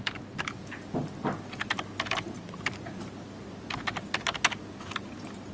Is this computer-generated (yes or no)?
no